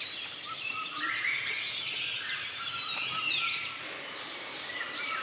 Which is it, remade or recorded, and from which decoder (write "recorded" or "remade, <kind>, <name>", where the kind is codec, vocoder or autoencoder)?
remade, vocoder, BigVGAN v2